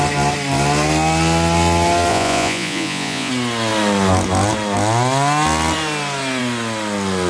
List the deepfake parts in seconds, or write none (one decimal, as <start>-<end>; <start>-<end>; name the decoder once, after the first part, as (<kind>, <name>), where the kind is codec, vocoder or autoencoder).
2.1-3.3 (vocoder, Vocos)

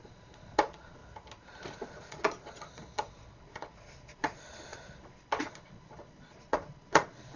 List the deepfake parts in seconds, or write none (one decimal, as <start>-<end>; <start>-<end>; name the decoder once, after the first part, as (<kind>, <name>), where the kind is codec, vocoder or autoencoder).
0.0-1.0 (vocoder, Vocos); 1.9-7.4

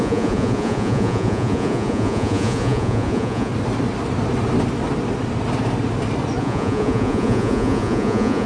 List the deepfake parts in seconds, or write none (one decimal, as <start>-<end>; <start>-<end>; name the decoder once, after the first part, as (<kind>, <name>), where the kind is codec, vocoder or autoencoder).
0.0-3.5 (vocoder, Vocos); 6.4-8.5

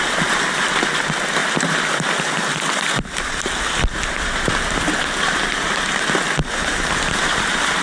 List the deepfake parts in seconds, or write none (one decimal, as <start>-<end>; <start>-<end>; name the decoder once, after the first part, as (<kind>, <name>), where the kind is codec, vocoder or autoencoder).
none

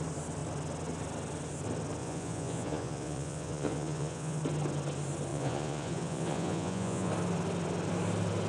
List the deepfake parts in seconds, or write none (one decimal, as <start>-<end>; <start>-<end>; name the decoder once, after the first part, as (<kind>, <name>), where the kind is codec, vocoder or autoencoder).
2.0-4.4 (vocoder, Vocos); 5.3-7.1

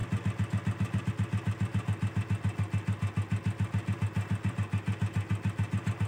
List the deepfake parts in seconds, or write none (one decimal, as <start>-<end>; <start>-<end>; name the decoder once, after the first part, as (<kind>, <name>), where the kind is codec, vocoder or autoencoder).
none

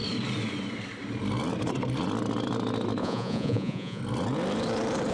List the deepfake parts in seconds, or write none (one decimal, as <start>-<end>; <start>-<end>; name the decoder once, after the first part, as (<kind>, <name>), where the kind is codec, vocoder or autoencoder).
3.0-4.0 (vocoder, Vocos)